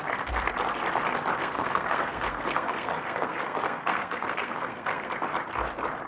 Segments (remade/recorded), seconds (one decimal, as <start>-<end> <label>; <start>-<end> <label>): 0.0-1.4 recorded; 1.4-5.1 remade; 5.1-6.1 recorded